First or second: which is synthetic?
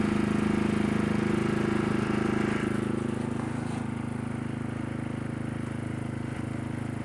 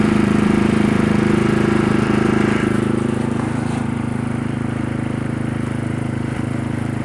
second